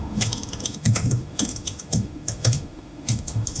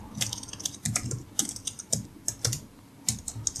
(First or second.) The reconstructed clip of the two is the first